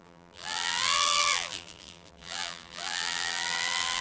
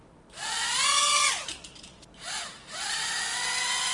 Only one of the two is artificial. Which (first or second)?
first